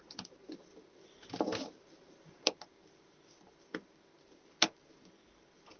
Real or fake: real